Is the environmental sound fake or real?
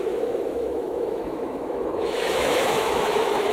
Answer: fake